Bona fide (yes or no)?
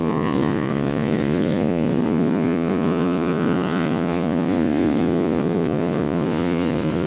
no